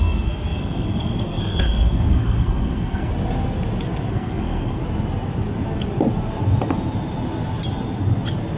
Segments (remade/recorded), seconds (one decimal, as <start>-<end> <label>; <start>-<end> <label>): 0.0-3.1 remade; 3.1-4.1 recorded; 4.1-4.8 remade; 4.8-8.6 recorded